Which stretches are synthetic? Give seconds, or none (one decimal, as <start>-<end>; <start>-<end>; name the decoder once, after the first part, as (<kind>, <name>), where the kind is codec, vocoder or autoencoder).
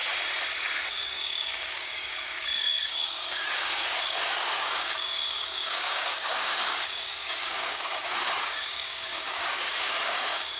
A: 0.9-10.6 (codec, DAC)